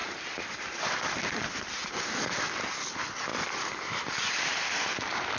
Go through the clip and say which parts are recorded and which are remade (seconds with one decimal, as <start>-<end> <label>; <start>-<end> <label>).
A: 0.0-2.9 remade; 2.9-3.3 recorded; 3.3-5.4 remade